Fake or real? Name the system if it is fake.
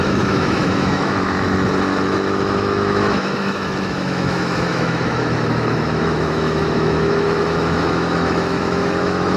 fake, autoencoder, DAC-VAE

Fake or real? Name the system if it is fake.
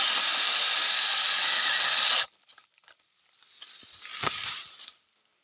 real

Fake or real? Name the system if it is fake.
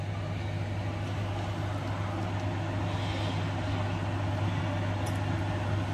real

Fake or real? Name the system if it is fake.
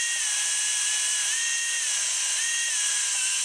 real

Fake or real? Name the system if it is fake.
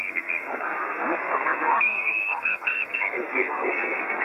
fake, codec, SNAC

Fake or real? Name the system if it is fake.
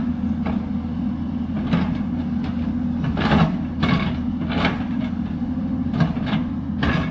real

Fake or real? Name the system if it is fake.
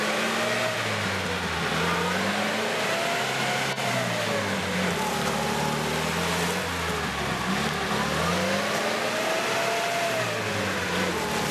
real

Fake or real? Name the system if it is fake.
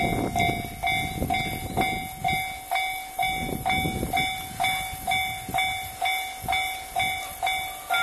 real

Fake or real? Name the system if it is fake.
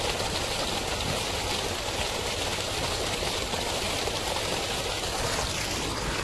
real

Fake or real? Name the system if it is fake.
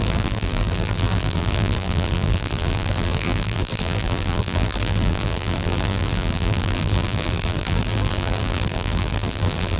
fake, vocoder, BigVGAN v2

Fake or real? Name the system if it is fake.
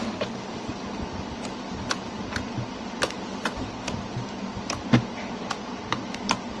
real